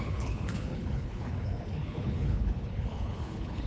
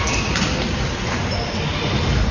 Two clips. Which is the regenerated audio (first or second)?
first